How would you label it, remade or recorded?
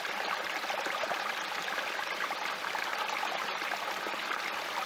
recorded